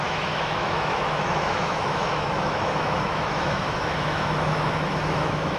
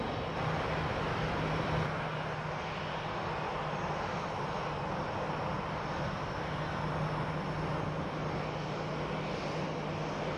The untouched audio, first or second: second